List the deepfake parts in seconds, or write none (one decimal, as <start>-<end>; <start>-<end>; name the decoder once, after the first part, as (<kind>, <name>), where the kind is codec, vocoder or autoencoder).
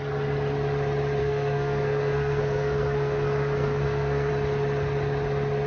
1.2-4.3 (codec, SNAC)